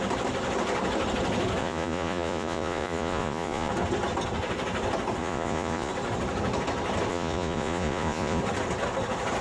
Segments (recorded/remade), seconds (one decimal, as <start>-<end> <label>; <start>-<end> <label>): 0.0-1.6 recorded; 1.6-3.7 remade; 3.7-5.2 recorded; 5.2-5.9 remade; 5.9-7.1 recorded; 7.1-8.4 remade; 8.4-9.4 recorded